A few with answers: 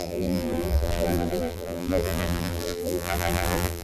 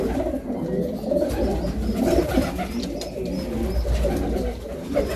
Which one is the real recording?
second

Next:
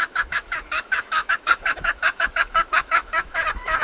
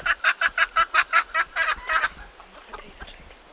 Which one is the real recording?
second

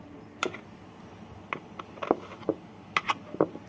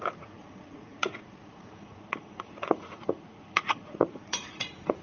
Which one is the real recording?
first